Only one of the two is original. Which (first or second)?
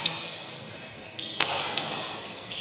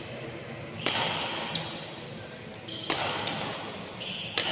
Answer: second